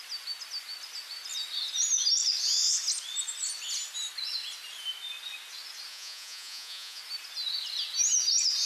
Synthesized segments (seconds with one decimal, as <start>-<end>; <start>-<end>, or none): 5.9-7.0